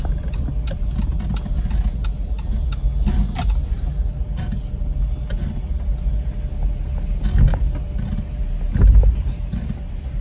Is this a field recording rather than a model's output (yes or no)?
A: yes